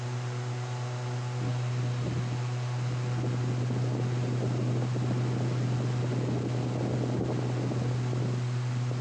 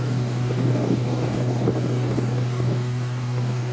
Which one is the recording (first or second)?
first